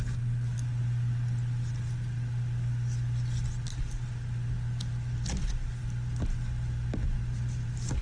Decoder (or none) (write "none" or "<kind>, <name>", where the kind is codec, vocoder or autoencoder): none